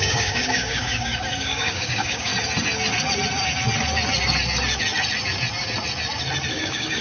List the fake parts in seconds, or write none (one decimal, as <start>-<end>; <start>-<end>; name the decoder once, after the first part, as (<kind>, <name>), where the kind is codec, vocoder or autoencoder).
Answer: 0.0-2.3 (codec, DAC); 6.5-7.0